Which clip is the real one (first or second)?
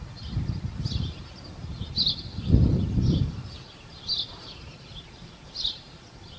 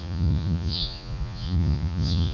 first